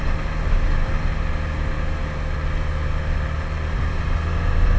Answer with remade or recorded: recorded